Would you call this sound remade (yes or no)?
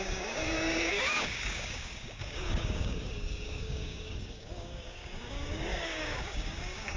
yes